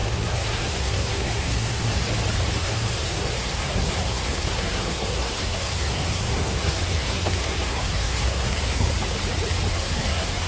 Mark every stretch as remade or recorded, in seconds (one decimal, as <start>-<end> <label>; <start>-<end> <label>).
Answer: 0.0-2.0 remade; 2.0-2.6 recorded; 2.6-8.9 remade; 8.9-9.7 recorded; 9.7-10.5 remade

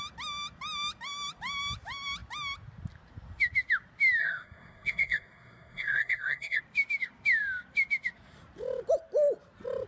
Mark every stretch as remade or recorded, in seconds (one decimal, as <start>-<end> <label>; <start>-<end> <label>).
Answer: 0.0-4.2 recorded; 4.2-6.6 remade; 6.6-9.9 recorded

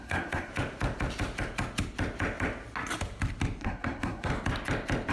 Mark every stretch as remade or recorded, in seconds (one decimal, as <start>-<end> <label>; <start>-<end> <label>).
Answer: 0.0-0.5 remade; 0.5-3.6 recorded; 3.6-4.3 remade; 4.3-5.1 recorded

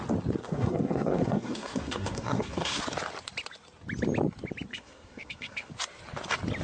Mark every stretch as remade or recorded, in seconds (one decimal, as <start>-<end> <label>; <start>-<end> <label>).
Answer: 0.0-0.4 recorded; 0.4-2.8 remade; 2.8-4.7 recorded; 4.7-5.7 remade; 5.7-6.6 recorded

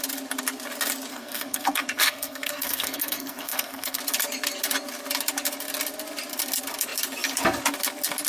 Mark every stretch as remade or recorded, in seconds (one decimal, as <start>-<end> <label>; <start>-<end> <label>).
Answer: 0.0-1.1 recorded; 1.1-4.0 remade; 4.0-8.3 recorded

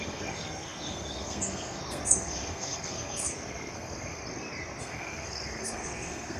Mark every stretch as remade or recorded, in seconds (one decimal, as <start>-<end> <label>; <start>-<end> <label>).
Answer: 0.0-4.2 remade; 4.2-4.8 recorded; 4.8-6.4 remade